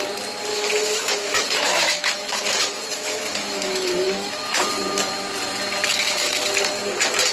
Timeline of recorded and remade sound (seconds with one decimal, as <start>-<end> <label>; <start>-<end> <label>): 0.0-0.5 recorded; 0.5-4.7 remade; 4.7-5.9 recorded; 5.9-6.4 remade; 6.4-7.3 recorded